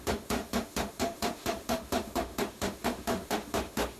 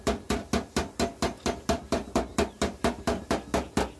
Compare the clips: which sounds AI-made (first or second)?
first